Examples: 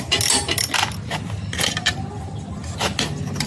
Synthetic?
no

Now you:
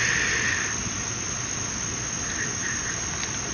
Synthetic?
no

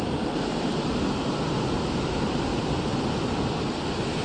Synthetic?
no